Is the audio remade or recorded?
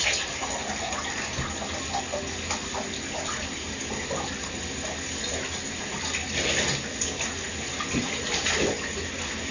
recorded